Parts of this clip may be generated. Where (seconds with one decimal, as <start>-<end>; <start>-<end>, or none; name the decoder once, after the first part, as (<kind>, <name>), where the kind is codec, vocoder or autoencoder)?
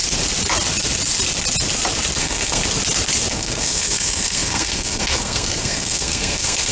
2.2-2.6 (codec, SNAC); 3.3-6.7